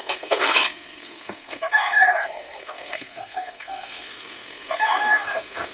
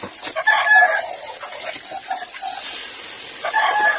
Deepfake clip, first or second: first